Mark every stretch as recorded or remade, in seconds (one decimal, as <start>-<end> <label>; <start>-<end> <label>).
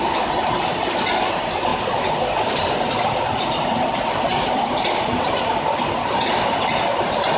0.0-7.4 recorded